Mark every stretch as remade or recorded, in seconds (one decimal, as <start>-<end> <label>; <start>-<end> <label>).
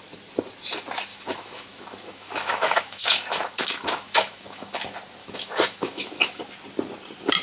0.0-1.1 recorded; 1.1-4.8 remade; 4.8-5.2 recorded; 5.2-6.4 remade; 6.4-7.4 recorded